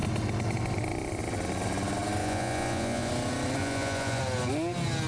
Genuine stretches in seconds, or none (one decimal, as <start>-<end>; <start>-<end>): 0.0-2.2; 3.1-3.6; 4.2-5.1